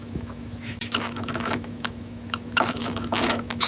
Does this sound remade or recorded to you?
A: remade